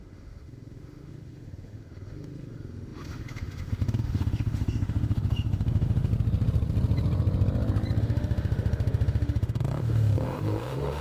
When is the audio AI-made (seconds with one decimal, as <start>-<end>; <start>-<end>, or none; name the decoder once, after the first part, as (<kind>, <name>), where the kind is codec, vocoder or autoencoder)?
0.0-6.1 (autoencoder, DAC-VAE); 8.0-11.0